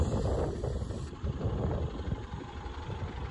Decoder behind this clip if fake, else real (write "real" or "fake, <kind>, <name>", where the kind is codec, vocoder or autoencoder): fake, vocoder, BigVGAN v2